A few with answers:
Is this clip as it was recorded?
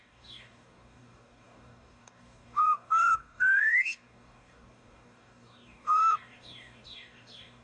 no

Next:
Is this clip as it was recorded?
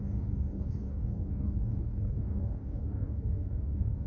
no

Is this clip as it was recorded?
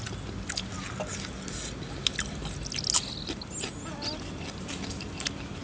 yes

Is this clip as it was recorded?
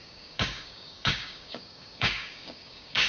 no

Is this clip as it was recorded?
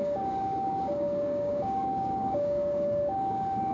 no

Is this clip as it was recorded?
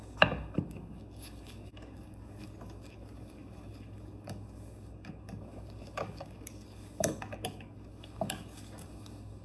no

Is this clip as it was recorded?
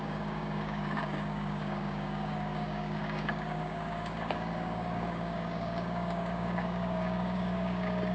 no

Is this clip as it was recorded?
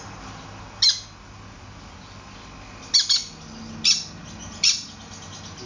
yes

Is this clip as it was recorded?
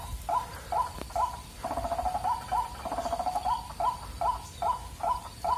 yes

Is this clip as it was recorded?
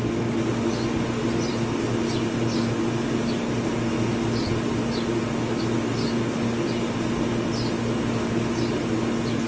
yes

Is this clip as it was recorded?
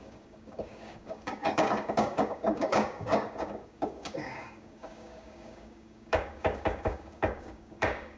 no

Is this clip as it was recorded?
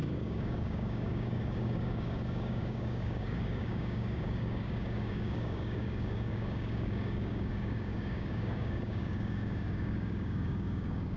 no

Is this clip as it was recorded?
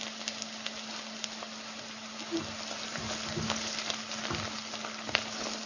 yes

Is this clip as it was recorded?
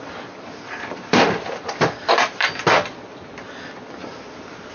yes